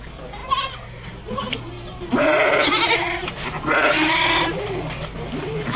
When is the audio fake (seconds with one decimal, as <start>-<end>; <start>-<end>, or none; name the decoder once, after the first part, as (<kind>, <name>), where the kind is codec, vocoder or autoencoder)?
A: none